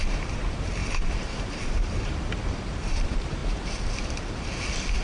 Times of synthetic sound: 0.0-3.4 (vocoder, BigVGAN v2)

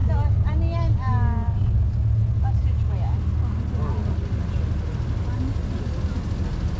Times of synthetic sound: none

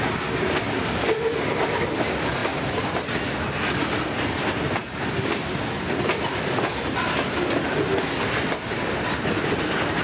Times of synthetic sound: 2.4-2.9 (vocoder, BigVGAN v2); 4.8-5.6

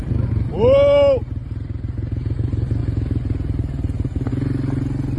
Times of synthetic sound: none

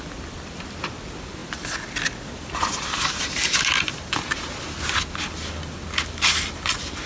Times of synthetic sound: none

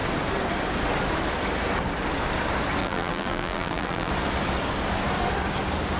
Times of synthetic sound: 2.8-4.1 (vocoder, BigVGAN v2)